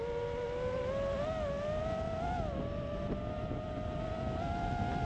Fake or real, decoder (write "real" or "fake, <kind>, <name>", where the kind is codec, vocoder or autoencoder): real